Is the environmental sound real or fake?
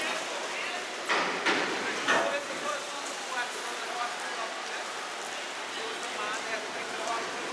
real